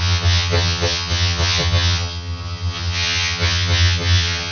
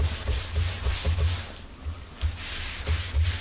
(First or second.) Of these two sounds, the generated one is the first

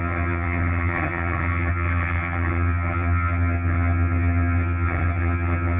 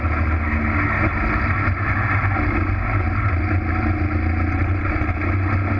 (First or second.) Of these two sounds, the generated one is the first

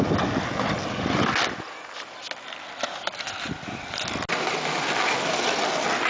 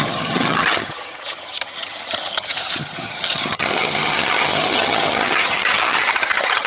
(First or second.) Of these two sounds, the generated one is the second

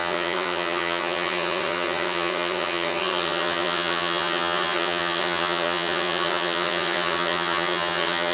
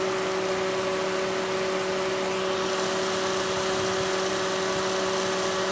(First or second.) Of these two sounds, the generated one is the first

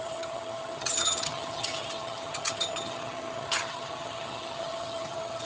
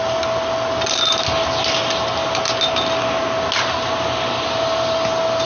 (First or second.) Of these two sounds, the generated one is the first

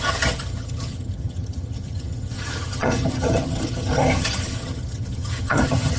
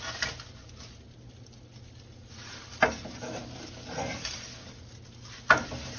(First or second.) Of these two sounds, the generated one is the first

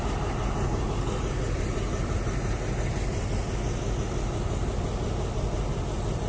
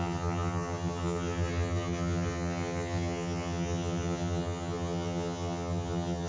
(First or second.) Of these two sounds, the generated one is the second